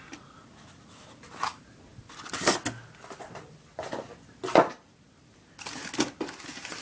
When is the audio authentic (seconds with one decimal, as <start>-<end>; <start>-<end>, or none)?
0.0-6.8